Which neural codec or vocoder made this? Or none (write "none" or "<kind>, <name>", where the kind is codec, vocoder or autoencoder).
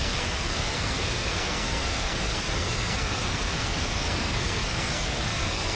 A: codec, SNAC